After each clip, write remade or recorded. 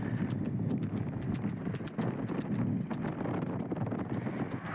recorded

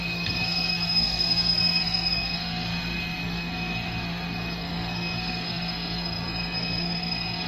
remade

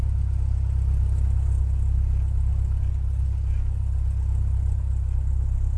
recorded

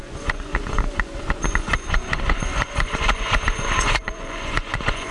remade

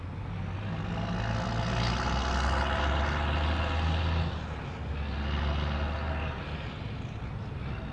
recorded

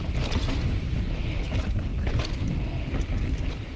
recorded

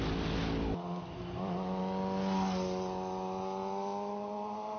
recorded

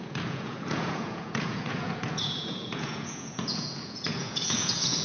remade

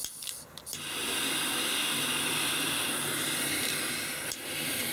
remade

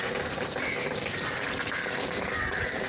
remade